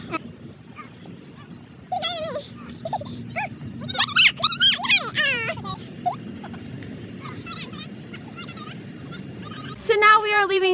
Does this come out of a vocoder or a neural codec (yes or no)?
yes